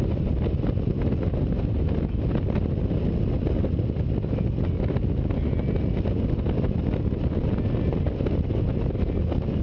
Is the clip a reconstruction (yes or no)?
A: no